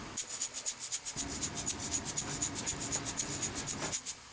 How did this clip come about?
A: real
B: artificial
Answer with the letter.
A